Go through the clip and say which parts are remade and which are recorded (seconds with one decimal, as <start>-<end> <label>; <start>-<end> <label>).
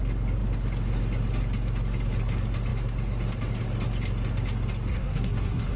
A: 0.0-4.9 recorded; 4.9-5.8 remade